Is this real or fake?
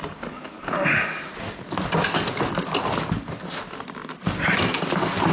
real